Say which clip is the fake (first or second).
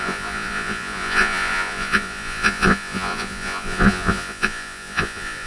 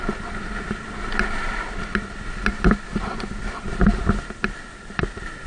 first